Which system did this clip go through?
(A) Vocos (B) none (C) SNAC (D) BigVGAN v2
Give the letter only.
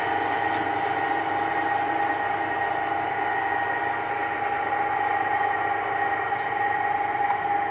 B